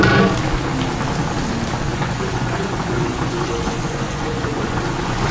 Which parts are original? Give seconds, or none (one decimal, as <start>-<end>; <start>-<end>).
0.0-1.9